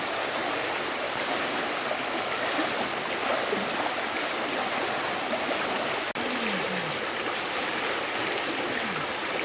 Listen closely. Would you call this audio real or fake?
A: real